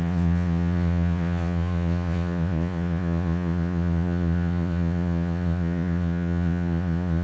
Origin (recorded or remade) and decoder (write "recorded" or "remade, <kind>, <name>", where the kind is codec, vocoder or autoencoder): remade, vocoder, Vocos